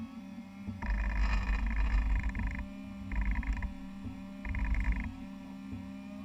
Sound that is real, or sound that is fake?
real